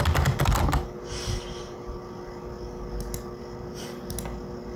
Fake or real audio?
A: real